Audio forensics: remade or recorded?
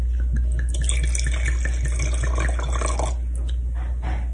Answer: recorded